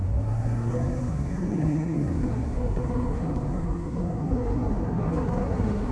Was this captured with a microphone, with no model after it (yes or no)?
no